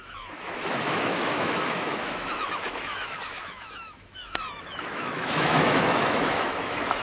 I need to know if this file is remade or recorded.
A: remade